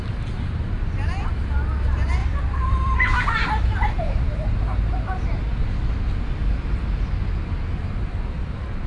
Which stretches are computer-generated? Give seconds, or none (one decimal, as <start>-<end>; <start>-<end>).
2.2-4.2

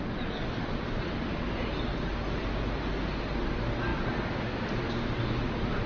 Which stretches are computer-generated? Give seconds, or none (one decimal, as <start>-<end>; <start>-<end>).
none

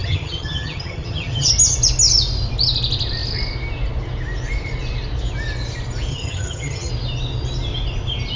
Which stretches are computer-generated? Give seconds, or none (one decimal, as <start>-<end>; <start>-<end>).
0.0-1.5; 6.1-6.9